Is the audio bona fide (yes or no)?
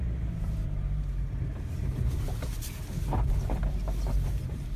no